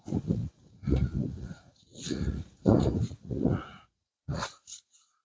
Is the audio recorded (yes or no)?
no